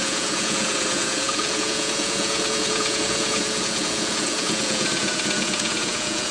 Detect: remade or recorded remade